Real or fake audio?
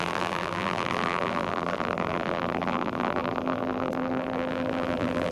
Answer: fake